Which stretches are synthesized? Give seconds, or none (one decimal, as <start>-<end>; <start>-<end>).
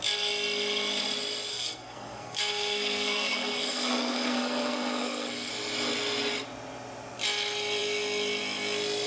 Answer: 1.5-5.5